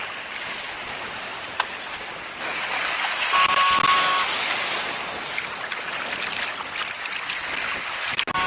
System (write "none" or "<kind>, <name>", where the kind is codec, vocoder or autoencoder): none